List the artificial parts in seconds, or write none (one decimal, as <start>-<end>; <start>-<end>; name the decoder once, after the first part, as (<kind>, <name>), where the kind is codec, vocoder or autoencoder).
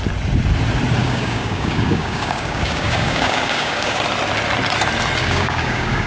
1.0-4.0 (codec, DAC); 5.2-6.1